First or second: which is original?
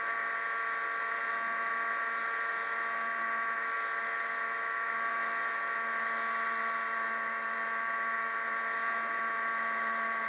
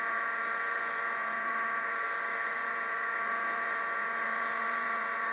first